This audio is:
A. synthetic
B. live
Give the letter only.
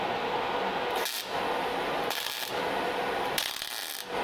B